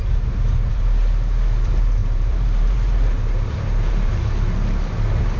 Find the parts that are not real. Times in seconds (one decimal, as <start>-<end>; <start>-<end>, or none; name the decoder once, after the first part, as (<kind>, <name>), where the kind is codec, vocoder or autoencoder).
2.0-3.1 (vocoder, BigVGAN v2)